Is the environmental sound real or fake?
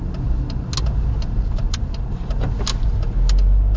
real